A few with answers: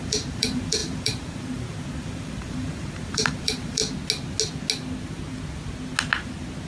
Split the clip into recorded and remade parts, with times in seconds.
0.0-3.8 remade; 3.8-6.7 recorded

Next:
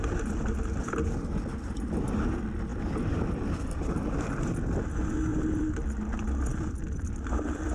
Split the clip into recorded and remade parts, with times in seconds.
0.0-2.7 recorded; 2.7-4.5 remade; 4.5-5.3 recorded; 5.3-5.8 remade; 5.8-6.5 recorded; 6.5-7.7 remade